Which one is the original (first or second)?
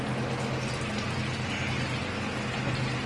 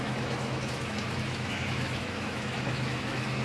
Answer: first